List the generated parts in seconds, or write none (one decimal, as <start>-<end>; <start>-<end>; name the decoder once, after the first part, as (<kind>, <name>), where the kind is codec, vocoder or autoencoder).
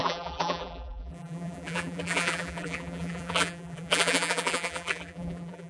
0.0-5.7 (vocoder, BigVGAN v2)